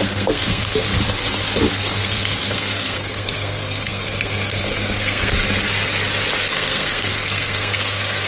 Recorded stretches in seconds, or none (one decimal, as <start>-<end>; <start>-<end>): 0.9-1.7; 5.4-6.4

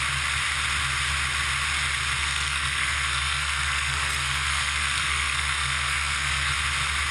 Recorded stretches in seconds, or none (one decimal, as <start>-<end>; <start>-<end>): 0.0-2.2; 6.5-7.1

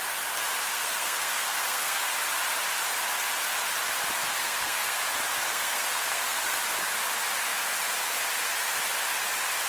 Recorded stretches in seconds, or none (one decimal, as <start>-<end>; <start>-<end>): 0.0-0.7; 2.0-4.4; 5.0-5.5; 6.6-9.7

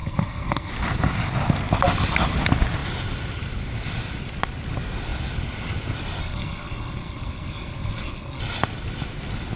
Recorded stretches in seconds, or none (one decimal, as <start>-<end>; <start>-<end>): 0.7-6.2; 8.4-9.6